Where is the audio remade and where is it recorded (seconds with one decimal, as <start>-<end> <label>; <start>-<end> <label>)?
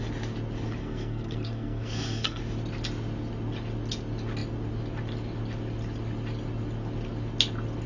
0.0-0.8 recorded; 0.8-2.4 remade; 2.4-7.9 recorded